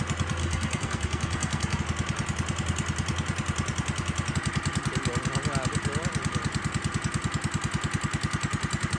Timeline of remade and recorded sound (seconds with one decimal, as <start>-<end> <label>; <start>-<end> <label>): 0.0-0.4 recorded; 0.4-1.8 remade; 1.8-9.0 recorded